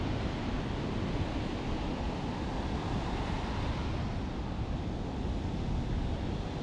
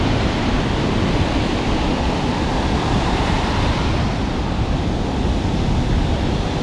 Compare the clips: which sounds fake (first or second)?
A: second